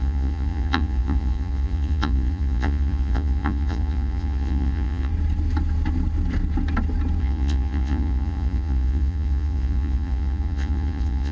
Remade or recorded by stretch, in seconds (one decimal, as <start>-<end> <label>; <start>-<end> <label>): 0.0-5.1 remade; 5.1-7.2 recorded; 7.2-11.3 remade